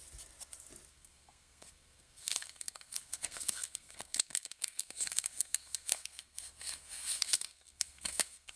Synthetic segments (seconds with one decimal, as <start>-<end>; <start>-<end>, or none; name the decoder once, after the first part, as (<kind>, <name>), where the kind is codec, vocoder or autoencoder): 0.9-8.6 (codec, SNAC)